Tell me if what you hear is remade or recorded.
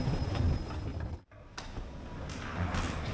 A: recorded